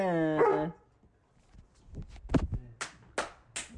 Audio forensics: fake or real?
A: real